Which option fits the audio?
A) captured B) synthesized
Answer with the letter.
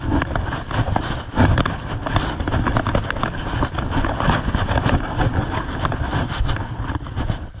A